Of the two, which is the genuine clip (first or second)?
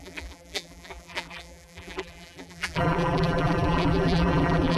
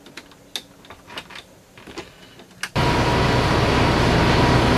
second